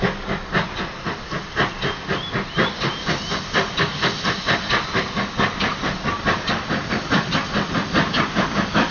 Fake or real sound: real